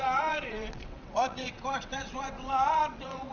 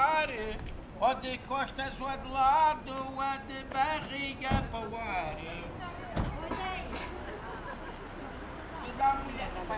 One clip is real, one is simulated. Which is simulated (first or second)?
first